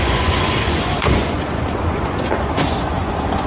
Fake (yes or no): yes